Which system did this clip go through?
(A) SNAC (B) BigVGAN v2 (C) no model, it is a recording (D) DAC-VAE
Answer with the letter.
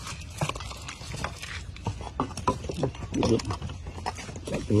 C